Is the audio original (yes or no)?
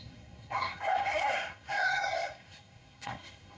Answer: no